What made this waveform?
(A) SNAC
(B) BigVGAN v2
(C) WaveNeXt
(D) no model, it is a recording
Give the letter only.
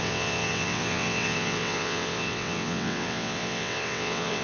C